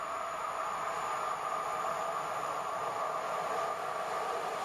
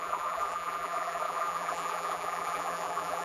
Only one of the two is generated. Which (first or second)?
second